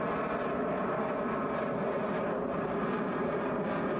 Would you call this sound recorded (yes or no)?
yes